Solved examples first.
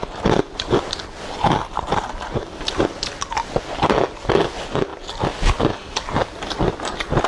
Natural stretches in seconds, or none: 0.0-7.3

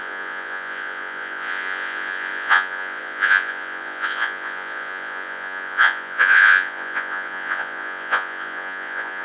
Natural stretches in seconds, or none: none

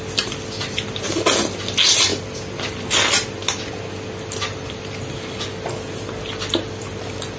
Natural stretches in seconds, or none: 0.0-7.4

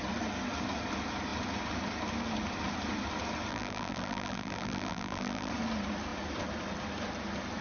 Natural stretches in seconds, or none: 0.0-3.5; 5.5-7.6

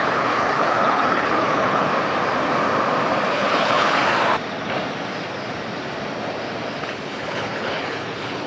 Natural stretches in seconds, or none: 1.9-3.3; 4.0-6.8